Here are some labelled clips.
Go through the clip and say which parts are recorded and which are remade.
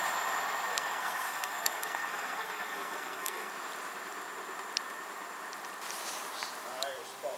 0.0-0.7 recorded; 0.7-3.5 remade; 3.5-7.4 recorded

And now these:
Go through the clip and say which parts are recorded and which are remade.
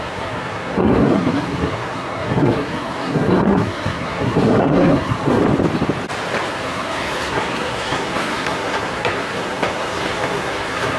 0.0-5.4 remade; 5.4-6.5 recorded; 6.5-11.0 remade